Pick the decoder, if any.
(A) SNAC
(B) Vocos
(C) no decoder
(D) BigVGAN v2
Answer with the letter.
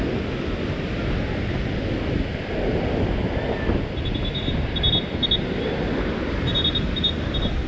C